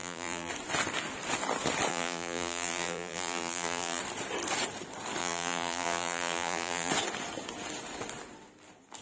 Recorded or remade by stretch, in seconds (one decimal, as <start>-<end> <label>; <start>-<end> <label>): 0.0-0.5 remade; 0.5-1.9 recorded; 1.9-4.0 remade; 4.0-5.2 recorded; 5.2-6.9 remade; 6.9-9.0 recorded